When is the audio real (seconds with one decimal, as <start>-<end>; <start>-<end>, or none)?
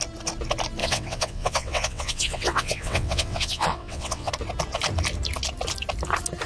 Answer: 0.0-0.8; 4.3-6.5